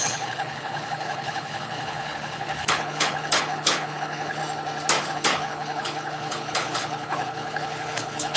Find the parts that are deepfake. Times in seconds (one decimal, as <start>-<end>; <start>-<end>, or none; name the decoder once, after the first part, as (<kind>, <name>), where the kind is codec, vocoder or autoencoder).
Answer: 0.0-4.4 (codec, HILCodec); 5.0-8.4